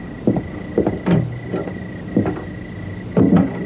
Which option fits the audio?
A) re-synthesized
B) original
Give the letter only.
B